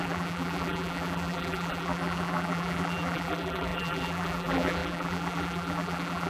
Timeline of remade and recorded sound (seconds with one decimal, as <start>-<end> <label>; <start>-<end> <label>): 0.0-6.3 remade